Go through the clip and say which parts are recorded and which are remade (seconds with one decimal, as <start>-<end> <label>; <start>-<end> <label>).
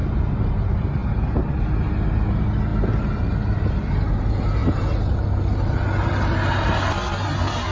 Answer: 0.0-7.7 recorded